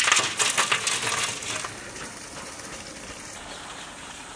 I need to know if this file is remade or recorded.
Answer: recorded